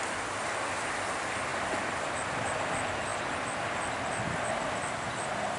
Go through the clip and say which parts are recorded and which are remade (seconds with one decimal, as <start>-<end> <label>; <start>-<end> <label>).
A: 0.0-5.6 recorded